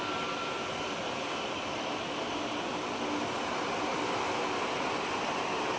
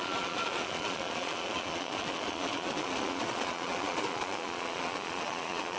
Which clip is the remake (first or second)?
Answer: second